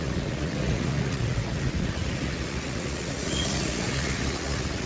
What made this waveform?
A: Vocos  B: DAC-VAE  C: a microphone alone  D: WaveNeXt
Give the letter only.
A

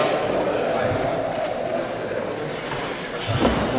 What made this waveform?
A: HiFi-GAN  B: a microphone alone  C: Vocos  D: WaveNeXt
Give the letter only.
B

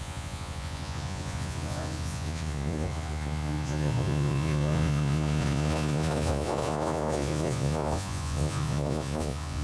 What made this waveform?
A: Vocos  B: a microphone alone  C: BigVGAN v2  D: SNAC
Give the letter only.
A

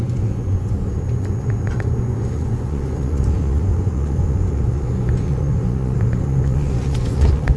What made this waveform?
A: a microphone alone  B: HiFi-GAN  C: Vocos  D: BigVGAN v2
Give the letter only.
C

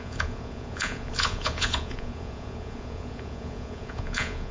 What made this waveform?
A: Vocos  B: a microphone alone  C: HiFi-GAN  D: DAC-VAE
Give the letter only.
A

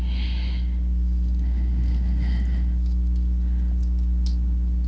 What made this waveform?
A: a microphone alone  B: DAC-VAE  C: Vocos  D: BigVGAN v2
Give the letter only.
A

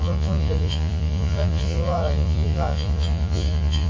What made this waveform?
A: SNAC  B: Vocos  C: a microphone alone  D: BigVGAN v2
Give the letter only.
B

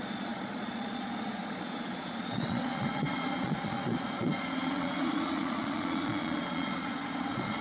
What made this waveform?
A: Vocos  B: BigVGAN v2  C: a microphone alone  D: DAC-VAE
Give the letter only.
A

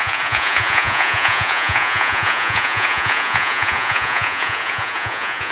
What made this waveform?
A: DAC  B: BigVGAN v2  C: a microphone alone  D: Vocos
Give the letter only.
D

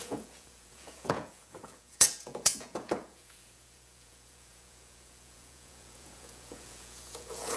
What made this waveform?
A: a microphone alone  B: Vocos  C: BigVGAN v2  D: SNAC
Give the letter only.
B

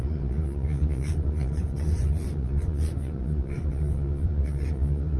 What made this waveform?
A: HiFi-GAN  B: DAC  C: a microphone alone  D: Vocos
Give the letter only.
D